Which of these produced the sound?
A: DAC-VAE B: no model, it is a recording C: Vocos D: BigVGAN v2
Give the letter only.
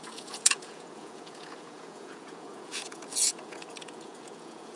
C